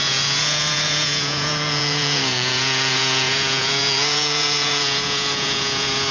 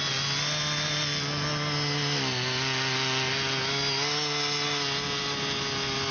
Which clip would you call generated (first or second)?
first